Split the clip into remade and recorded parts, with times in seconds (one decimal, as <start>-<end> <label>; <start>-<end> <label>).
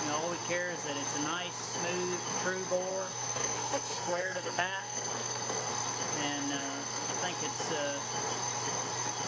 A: 0.0-2.9 recorded; 2.9-5.7 remade; 5.7-6.6 recorded; 6.6-7.1 remade; 7.1-9.3 recorded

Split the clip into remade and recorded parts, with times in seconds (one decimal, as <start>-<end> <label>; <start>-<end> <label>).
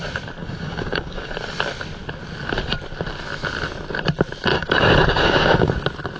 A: 0.0-0.4 recorded; 0.4-1.3 remade; 1.3-4.5 recorded; 4.5-5.7 remade; 5.7-6.2 recorded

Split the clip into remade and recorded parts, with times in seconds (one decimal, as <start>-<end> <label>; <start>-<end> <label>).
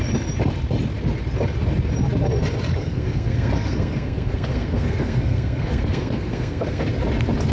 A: 0.0-2.8 recorded; 2.8-6.9 remade; 6.9-7.5 recorded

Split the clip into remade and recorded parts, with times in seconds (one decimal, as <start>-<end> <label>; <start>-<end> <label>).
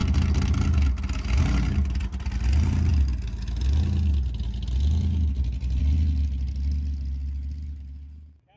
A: 0.0-8.6 recorded